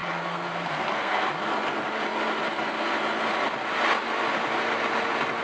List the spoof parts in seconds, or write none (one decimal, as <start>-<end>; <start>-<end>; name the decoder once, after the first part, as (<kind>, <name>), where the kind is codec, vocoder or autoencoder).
0.0-1.3 (codec, SNAC)